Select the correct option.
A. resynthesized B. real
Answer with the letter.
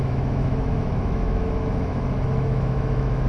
A